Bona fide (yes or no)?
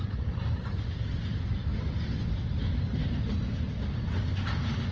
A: yes